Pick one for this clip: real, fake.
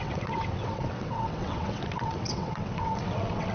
fake